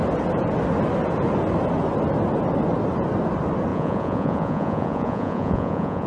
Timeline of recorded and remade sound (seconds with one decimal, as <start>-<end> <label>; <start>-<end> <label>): 0.0-3.7 recorded; 3.7-6.1 remade